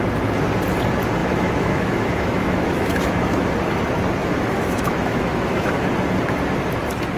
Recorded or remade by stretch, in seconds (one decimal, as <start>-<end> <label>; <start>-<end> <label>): 0.0-1.2 recorded; 1.2-3.5 remade; 3.5-4.2 recorded; 4.2-5.9 remade; 5.9-7.2 recorded